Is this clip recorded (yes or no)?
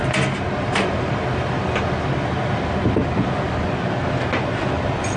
yes